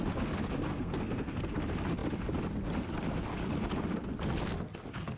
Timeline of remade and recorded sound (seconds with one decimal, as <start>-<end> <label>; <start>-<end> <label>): 0.0-0.7 recorded; 0.7-1.4 remade; 1.4-5.2 recorded